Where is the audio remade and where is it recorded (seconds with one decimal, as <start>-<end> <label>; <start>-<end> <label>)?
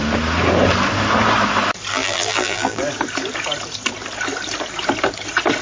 0.0-1.9 recorded; 1.9-2.8 remade; 2.8-5.6 recorded